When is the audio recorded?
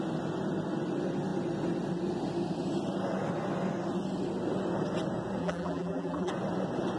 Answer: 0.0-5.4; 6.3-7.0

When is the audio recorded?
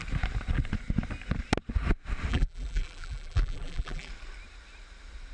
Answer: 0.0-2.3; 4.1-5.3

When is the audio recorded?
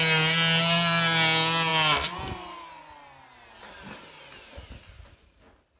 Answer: 0.0-5.8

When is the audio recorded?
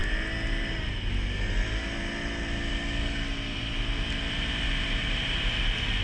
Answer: 0.0-6.0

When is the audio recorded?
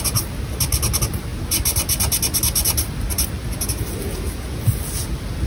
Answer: 0.0-5.5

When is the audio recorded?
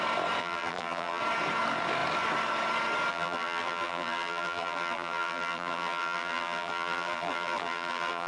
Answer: 0.0-0.4; 1.2-3.1